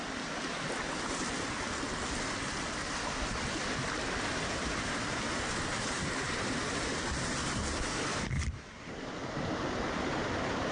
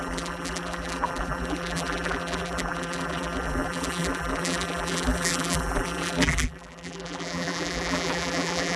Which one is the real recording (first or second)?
first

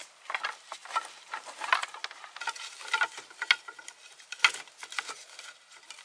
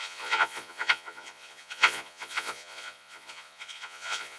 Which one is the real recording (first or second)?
first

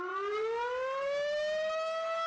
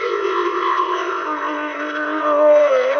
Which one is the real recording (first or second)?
first